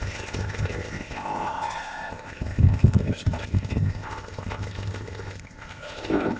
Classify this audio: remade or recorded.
remade